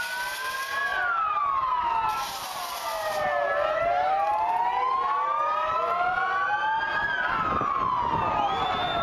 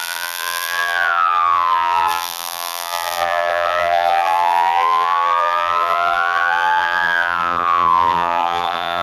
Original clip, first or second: first